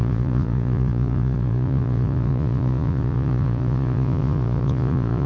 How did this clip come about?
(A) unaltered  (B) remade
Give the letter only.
B